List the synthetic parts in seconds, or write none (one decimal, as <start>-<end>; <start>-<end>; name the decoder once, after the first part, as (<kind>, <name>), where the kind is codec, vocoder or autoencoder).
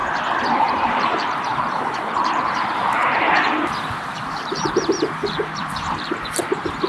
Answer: 0.6-6.9 (vocoder, BigVGAN v2)